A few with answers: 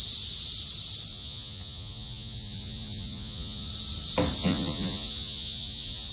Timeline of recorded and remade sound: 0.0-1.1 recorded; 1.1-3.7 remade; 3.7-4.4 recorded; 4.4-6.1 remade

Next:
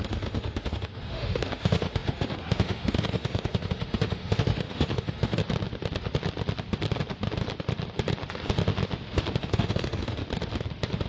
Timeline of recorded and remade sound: 0.0-5.4 remade; 5.4-9.4 recorded; 9.4-10.2 remade; 10.2-11.1 recorded